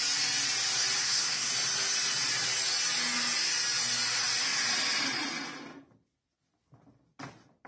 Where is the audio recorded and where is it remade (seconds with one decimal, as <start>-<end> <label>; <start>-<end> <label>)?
0.0-1.0 recorded; 1.0-1.5 remade; 1.5-7.7 recorded